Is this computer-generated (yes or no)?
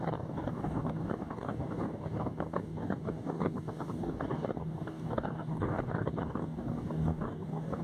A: yes